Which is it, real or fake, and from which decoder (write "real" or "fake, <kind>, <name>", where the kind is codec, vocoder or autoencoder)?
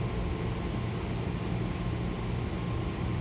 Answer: real